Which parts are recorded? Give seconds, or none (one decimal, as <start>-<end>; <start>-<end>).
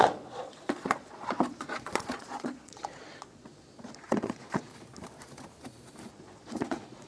4.7-6.1